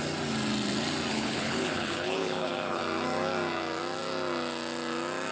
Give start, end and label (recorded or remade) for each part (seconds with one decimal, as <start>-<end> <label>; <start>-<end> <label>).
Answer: 0.0-1.1 recorded; 1.1-2.8 remade; 2.8-5.3 recorded